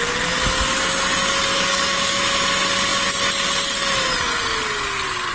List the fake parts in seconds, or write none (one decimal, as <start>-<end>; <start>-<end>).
1.5-2.2